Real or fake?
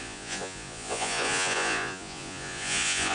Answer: fake